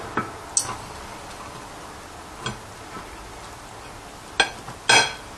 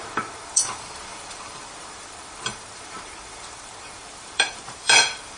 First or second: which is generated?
second